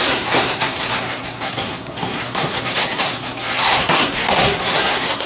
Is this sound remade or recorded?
remade